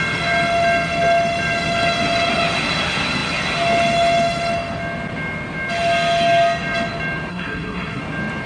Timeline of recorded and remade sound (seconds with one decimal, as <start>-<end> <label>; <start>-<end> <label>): 0.0-7.3 recorded; 7.3-8.0 remade; 8.0-8.5 recorded